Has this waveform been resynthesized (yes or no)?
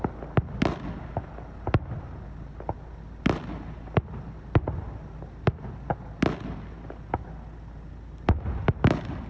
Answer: no